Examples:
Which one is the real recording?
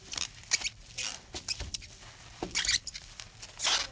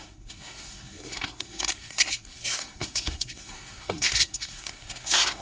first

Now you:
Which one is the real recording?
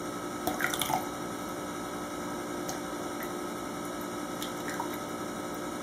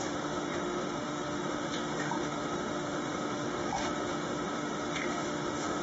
first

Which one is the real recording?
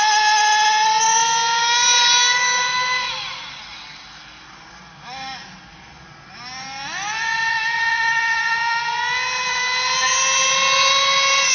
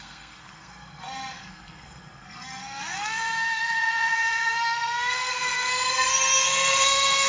first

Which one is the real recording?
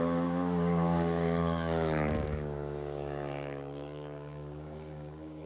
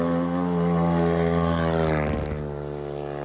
second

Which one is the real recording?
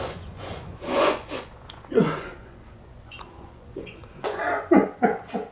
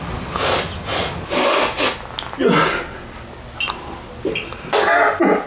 second